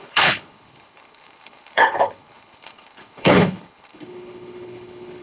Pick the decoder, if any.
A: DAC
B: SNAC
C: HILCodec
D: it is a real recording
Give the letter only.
C